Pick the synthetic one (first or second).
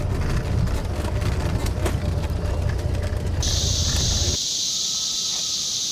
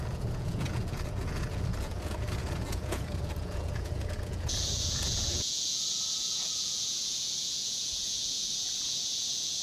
second